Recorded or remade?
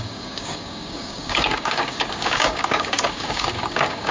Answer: remade